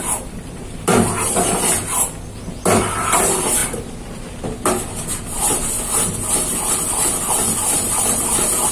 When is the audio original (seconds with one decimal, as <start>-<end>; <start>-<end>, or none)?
none